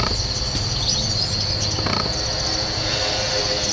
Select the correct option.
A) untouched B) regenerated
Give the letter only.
A